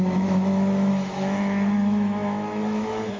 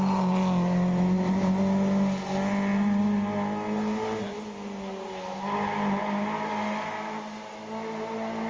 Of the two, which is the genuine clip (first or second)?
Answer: second